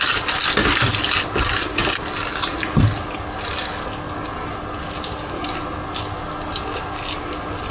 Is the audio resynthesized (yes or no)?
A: no